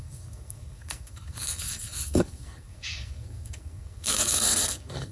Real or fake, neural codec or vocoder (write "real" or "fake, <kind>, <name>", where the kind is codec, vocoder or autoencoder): fake, codec, SNAC